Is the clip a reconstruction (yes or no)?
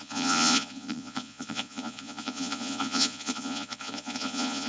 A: yes